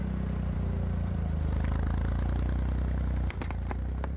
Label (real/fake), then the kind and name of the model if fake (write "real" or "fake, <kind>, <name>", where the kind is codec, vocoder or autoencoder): fake, vocoder, BigVGAN v2